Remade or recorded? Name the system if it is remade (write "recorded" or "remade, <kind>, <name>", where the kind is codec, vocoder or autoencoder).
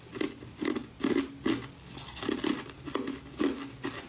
recorded